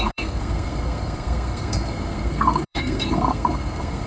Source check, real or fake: fake